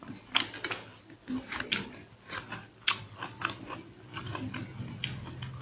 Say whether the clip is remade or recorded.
recorded